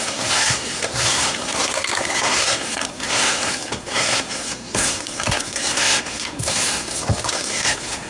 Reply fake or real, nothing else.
fake